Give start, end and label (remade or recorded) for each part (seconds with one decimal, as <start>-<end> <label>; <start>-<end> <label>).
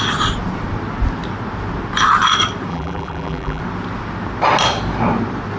0.0-2.7 recorded; 2.7-3.6 remade; 3.6-5.6 recorded